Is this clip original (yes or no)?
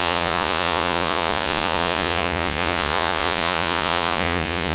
no